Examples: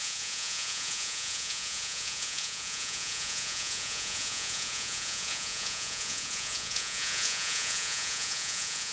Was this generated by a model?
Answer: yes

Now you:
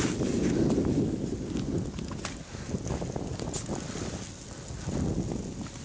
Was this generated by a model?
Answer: no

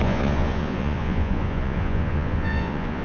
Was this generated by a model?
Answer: yes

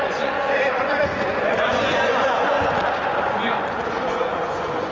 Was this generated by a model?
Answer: yes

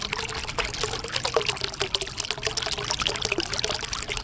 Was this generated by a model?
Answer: no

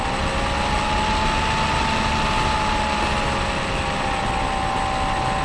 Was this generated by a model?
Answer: no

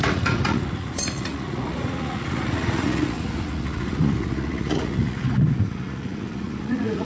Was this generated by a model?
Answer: yes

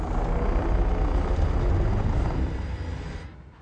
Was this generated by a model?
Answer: no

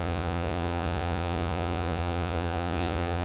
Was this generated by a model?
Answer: yes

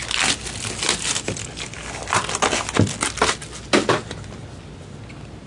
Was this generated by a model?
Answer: no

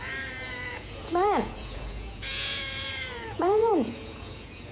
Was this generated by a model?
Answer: yes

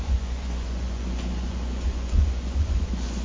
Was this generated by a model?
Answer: yes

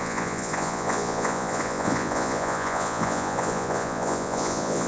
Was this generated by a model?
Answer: yes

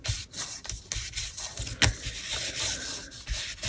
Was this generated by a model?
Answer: no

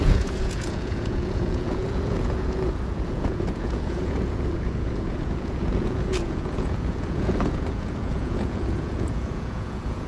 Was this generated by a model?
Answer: yes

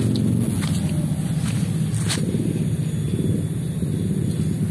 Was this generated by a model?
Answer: no